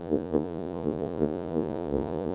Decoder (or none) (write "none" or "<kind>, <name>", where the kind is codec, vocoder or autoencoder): vocoder, Vocos